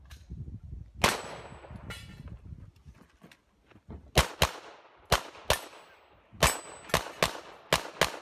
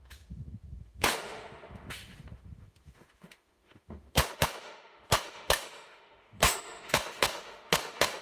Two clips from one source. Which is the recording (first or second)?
first